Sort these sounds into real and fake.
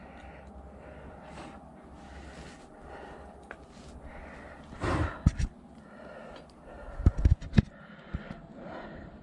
real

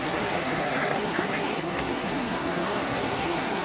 fake